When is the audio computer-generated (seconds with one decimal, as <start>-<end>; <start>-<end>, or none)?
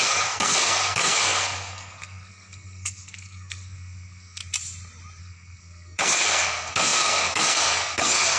0.0-4.4; 5.2-8.4